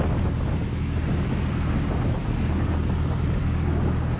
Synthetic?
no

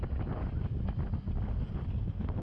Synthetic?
no